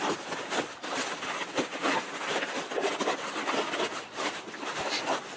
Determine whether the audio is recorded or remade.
recorded